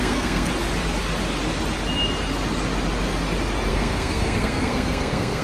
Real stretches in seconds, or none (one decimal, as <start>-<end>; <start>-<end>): 0.5-3.7